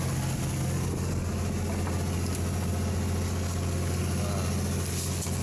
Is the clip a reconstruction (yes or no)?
no